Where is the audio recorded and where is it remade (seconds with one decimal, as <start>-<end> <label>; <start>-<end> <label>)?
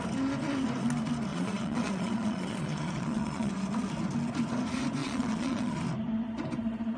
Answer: 0.0-1.3 recorded; 1.3-3.5 remade; 3.5-5.0 recorded; 5.0-5.8 remade; 5.8-7.0 recorded